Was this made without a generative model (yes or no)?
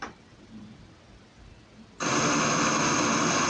yes